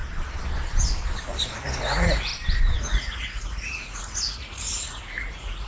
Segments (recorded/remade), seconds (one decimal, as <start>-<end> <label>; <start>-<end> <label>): 0.0-1.8 recorded; 1.8-2.3 remade; 2.3-2.8 recorded; 2.8-5.7 remade